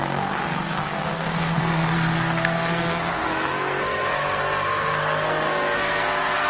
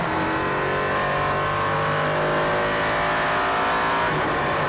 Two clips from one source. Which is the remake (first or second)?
first